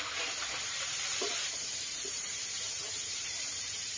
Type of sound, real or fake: fake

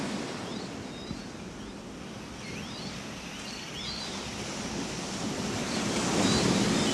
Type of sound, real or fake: real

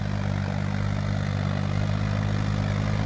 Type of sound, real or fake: real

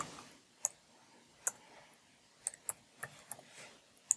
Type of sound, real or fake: real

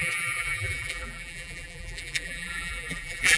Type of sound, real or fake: fake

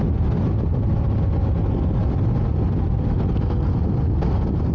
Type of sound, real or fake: real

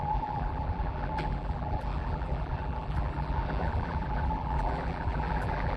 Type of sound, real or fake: fake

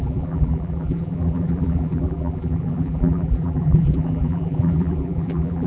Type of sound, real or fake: fake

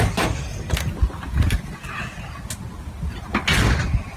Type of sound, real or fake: real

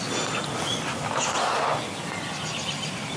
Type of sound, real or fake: real